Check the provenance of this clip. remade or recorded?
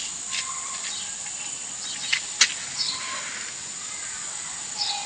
recorded